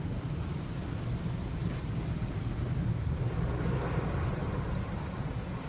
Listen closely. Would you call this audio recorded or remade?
recorded